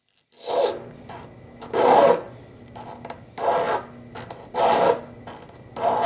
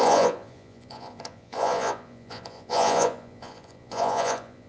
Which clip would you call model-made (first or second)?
second